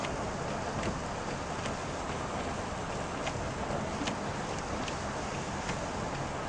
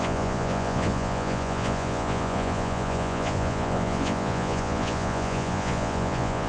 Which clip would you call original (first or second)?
first